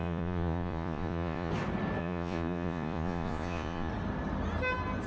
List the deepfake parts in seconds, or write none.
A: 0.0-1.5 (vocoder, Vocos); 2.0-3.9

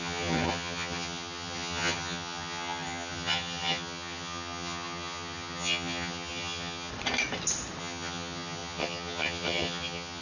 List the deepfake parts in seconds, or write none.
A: 0.0-6.9 (vocoder, HiFi-GAN); 7.8-10.2

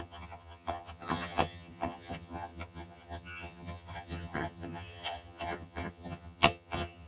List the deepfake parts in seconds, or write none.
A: 0.0-7.1 (vocoder, HiFi-GAN)